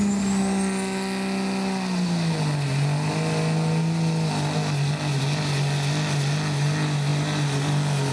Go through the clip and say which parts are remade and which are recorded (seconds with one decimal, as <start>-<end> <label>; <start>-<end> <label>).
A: 0.0-8.1 recorded